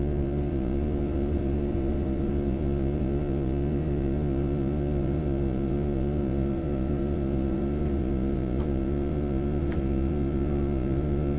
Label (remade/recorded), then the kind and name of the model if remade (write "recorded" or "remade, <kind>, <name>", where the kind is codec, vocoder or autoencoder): remade, vocoder, Vocos